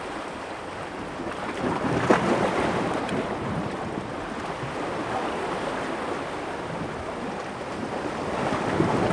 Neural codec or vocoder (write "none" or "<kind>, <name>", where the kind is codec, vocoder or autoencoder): none